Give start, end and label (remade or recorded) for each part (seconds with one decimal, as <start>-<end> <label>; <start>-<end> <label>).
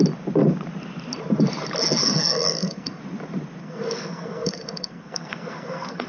0.0-2.0 recorded; 2.0-3.0 remade; 3.0-3.6 recorded; 3.6-6.1 remade